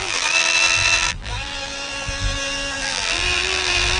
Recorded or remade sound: remade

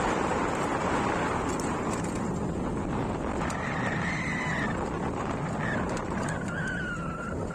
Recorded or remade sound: remade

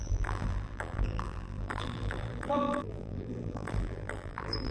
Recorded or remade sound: remade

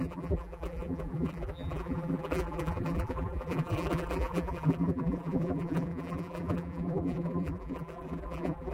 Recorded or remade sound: remade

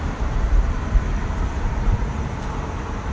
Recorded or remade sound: remade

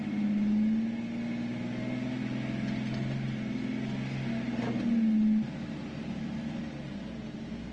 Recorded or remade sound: recorded